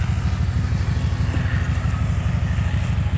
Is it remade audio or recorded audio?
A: recorded